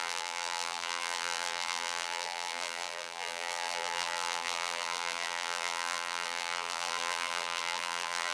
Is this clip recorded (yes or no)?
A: no